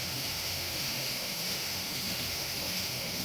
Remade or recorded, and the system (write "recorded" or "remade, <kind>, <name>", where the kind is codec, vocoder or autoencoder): remade, autoencoder, DAC-VAE